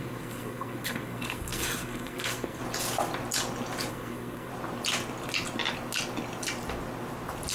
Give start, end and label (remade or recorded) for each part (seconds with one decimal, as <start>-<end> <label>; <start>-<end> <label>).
0.0-2.6 remade; 2.6-3.9 recorded; 3.9-4.5 remade; 4.5-7.5 recorded